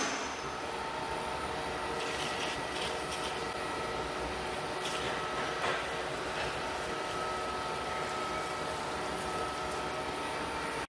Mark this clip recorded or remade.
recorded